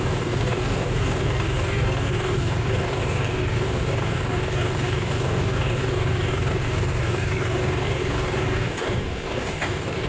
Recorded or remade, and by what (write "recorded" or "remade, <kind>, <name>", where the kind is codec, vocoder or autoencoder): remade, codec, DAC